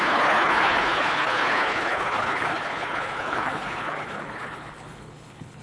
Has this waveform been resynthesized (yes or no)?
yes